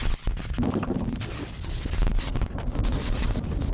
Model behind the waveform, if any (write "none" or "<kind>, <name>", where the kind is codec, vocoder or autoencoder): none